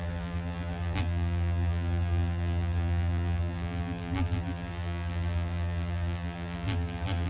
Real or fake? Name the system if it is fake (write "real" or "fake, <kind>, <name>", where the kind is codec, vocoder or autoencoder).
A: fake, vocoder, BigVGAN v2